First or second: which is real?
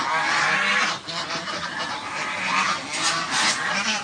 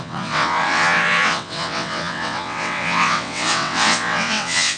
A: first